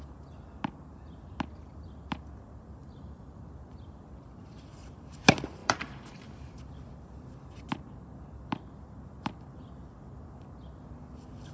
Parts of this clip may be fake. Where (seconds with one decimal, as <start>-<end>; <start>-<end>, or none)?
2.8-3.4; 5.6-6.6